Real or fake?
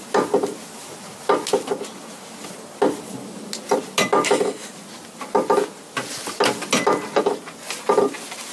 real